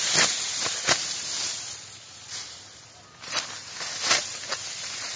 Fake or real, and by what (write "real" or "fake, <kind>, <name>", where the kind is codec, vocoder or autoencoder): real